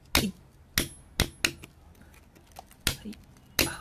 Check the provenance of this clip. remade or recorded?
recorded